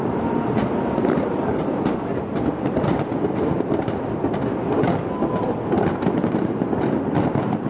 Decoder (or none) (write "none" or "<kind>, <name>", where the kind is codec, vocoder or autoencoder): none